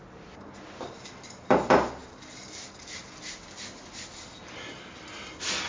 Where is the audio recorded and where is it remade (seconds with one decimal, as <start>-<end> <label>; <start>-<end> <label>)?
0.0-5.7 recorded

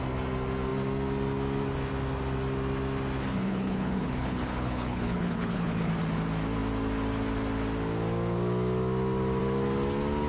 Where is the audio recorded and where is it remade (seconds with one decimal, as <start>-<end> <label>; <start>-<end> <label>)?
0.0-3.3 recorded; 3.3-5.9 remade; 5.9-10.3 recorded

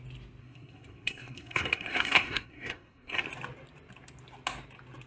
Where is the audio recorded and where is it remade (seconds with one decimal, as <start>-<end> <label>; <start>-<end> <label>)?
0.0-0.4 recorded; 0.4-3.2 remade; 3.2-5.1 recorded